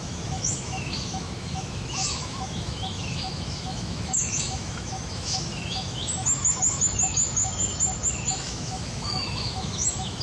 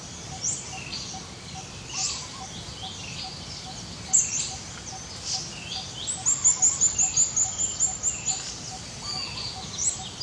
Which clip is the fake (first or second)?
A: first